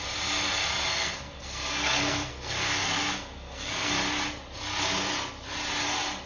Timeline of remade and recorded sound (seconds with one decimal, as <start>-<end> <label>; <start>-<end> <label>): 0.0-0.9 recorded; 0.9-3.9 remade; 3.9-6.3 recorded